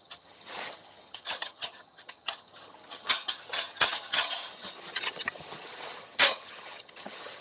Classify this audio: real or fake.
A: fake